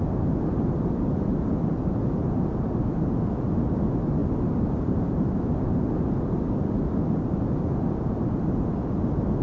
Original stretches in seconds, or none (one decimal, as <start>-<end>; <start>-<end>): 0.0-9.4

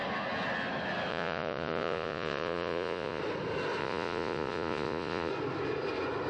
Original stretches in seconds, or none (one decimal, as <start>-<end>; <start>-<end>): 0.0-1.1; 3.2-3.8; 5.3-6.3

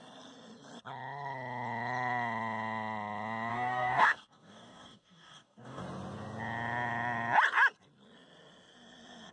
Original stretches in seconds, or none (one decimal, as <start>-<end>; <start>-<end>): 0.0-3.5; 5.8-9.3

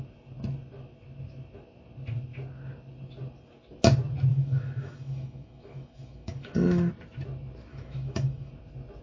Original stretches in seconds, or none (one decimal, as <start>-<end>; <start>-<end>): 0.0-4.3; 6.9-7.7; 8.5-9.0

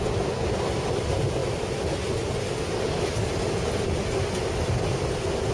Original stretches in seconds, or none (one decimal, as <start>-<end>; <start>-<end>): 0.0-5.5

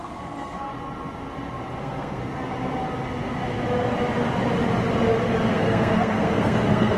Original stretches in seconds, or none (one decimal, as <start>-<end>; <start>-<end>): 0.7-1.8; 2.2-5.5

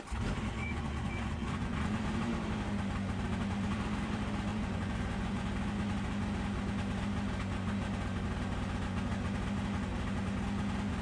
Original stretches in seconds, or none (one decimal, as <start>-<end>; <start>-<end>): 0.0-0.6; 2.0-4.5; 5.5-11.0

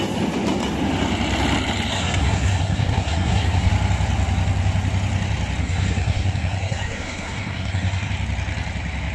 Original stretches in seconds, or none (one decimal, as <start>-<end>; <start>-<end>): 0.0-1.9; 3.7-5.6; 8.1-9.1